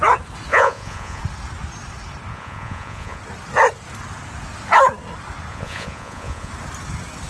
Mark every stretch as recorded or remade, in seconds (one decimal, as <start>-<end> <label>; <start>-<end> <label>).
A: 0.0-0.5 recorded; 0.5-1.2 remade; 1.2-2.3 recorded; 2.3-3.2 remade; 3.2-5.5 recorded; 5.5-6.5 remade; 6.5-7.3 recorded